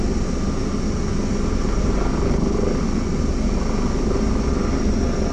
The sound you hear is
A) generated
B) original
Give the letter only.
B